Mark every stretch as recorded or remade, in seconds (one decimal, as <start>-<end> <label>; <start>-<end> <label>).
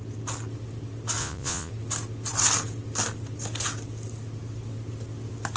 0.0-1.2 recorded; 1.2-1.7 remade; 1.7-5.6 recorded